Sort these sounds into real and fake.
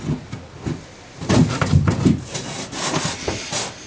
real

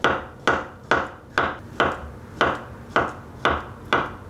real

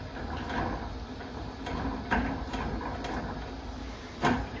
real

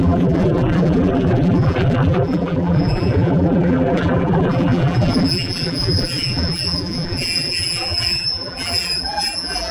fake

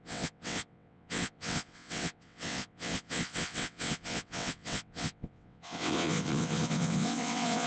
fake